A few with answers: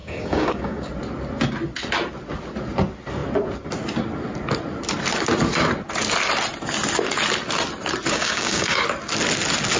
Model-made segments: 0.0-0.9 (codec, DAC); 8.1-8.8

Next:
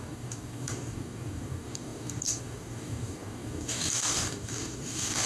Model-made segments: 0.0-5.3 (codec, DAC)